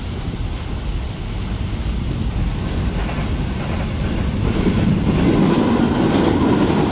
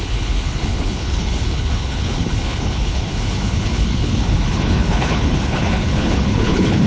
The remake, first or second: second